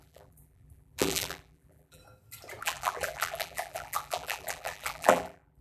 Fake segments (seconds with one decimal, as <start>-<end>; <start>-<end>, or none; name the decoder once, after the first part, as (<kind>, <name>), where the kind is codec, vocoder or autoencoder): 0.0-2.0 (vocoder, BigVGAN v2); 2.6-5.6